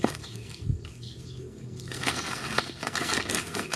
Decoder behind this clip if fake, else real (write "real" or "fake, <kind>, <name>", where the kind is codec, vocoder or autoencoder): fake, codec, SNAC